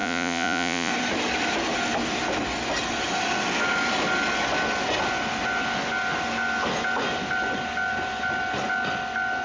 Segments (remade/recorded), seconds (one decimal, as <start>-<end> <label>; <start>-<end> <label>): 0.0-0.9 remade; 0.9-9.4 recorded